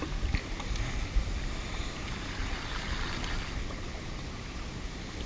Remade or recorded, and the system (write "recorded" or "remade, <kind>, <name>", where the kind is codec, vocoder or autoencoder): recorded